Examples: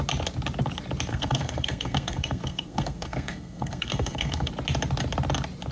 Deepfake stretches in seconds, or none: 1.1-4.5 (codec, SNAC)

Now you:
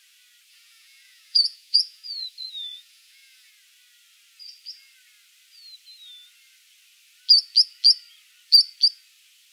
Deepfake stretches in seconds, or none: 0.5-3.5 (vocoder, Vocos)

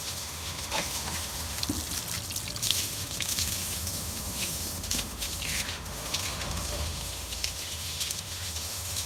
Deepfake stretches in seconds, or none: 0.0-1.6 (autoencoder, DAC-VAE); 2.6-9.1

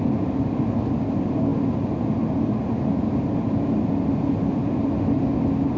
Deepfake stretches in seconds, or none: none

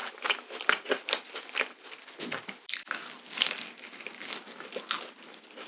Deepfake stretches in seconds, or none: 0.0-0.6 (autoencoder, DAC-VAE)

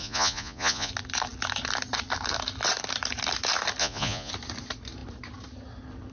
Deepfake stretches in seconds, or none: 0.0-0.9 (vocoder, Vocos); 3.8-4.3